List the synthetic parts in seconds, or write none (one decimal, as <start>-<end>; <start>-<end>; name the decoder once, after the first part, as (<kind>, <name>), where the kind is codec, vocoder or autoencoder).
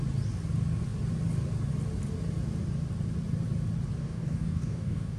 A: 4.0-5.2 (codec, DAC)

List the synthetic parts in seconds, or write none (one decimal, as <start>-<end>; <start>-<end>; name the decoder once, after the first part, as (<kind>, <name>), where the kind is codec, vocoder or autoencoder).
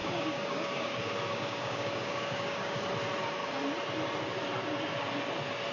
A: 0.0-2.9 (codec, DAC)